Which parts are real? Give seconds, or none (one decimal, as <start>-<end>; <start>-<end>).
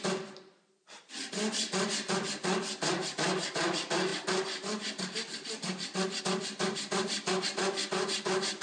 0.0-8.6